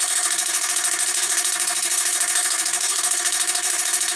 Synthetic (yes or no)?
yes